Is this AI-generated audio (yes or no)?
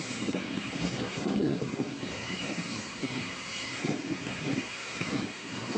yes